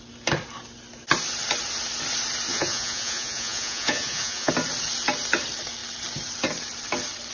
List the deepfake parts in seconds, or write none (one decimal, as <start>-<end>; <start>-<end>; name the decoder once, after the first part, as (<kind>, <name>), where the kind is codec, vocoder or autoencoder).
2.5-4.5 (vocoder, Vocos)